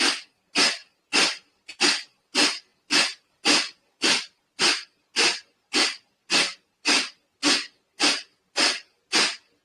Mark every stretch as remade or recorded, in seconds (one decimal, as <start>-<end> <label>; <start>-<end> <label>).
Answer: 0.0-9.6 recorded